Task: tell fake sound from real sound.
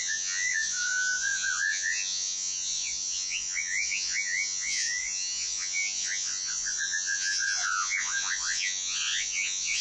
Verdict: fake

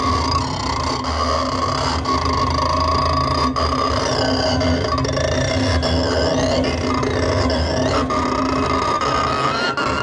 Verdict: real